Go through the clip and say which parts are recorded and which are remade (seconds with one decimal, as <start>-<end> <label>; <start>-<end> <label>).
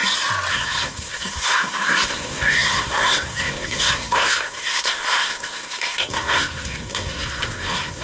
0.0-0.5 recorded; 0.5-8.0 remade